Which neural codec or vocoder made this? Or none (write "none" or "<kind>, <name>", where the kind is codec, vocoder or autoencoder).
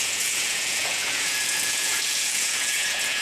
vocoder, Vocos